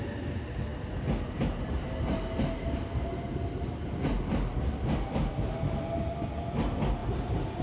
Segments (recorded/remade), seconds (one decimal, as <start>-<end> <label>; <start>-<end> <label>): 0.0-7.6 recorded